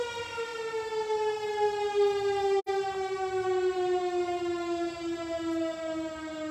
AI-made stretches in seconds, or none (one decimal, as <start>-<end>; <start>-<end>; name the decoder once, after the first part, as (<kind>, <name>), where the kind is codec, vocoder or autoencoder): none